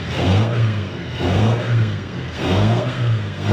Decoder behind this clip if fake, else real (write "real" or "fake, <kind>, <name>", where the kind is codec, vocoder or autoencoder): fake, codec, SNAC